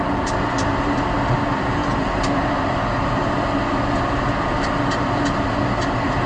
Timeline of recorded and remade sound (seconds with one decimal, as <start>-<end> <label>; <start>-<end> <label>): 0.0-6.3 recorded